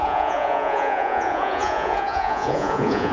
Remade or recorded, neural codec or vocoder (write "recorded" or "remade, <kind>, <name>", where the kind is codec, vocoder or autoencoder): remade, vocoder, Vocos